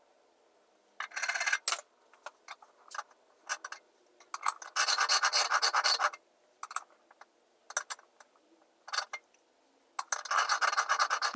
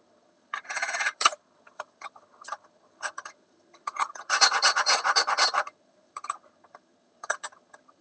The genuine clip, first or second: first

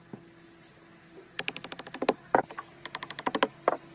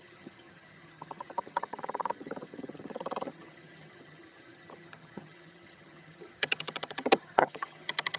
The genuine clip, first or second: first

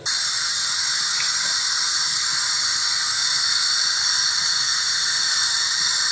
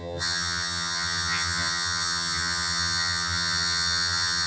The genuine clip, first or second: first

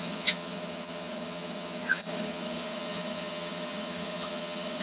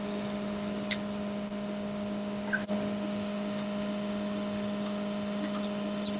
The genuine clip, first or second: second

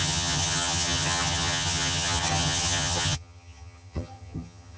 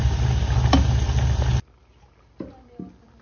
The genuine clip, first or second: second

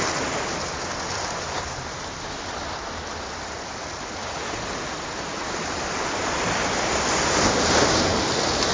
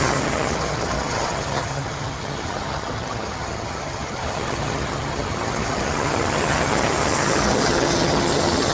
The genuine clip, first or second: first